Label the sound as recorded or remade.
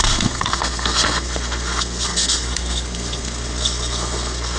remade